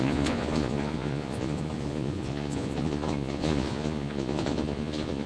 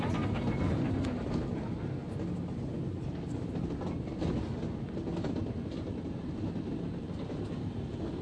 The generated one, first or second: first